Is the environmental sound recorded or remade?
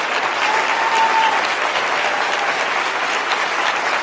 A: recorded